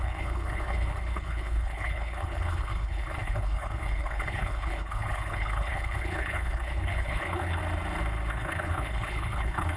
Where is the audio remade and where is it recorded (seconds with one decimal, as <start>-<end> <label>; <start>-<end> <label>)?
0.0-7.6 remade; 7.6-8.3 recorded; 8.3-9.8 remade